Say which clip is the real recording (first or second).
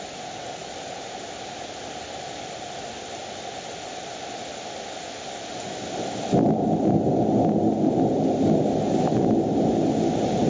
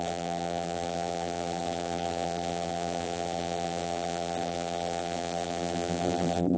first